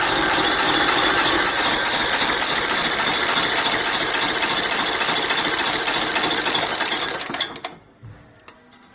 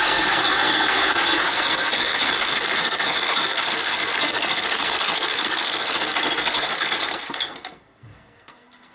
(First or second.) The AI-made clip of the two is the second